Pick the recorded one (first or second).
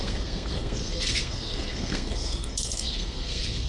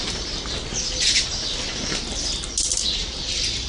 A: second